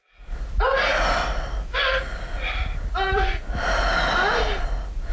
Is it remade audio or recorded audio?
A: recorded